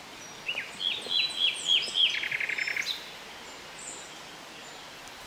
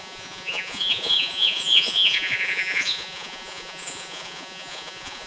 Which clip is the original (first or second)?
first